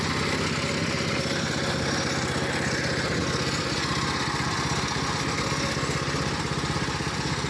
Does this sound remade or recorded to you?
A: recorded